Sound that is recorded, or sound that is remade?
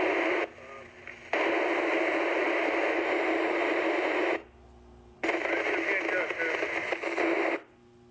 recorded